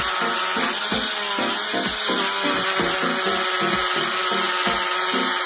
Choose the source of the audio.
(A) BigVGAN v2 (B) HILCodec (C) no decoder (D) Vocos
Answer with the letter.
C